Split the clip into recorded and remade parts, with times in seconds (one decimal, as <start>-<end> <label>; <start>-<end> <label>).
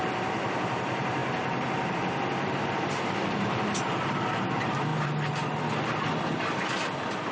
0.0-1.2 remade; 1.2-1.9 recorded; 1.9-4.9 remade; 4.9-5.8 recorded; 5.8-7.3 remade